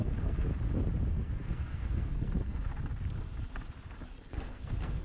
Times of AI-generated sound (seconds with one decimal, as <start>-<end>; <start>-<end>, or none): 0.0-0.5; 1.1-2.7; 4.3-5.0